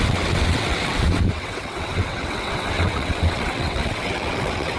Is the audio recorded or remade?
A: remade